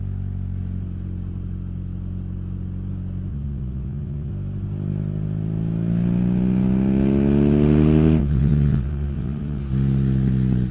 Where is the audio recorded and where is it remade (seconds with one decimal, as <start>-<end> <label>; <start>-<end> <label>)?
0.0-3.3 recorded; 3.3-4.3 remade; 4.3-8.2 recorded; 8.2-9.6 remade; 9.6-10.7 recorded